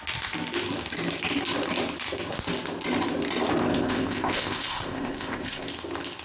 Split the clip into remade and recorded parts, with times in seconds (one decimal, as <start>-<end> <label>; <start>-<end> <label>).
0.0-3.6 recorded; 3.6-5.7 remade; 5.7-6.2 recorded